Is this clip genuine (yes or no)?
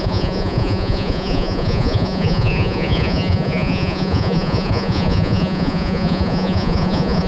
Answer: no